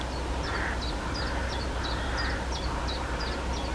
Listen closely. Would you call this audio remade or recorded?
recorded